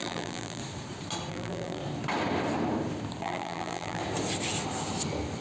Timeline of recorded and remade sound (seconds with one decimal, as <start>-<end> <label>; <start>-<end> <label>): 0.0-0.6 remade; 0.6-1.3 recorded; 1.3-1.8 remade; 1.8-3.2 recorded; 3.2-4.0 remade; 4.0-5.4 recorded